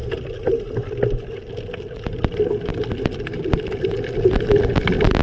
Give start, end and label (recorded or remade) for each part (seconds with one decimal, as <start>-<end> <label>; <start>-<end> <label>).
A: 0.0-2.7 recorded; 2.7-4.7 remade; 4.7-5.2 recorded